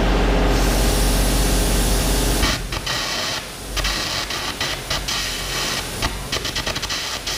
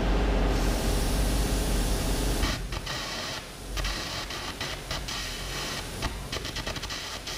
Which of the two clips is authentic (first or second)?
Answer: first